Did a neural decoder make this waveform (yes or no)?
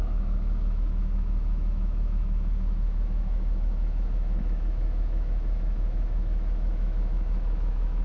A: yes